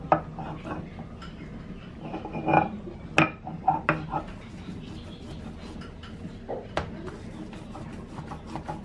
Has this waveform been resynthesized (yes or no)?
no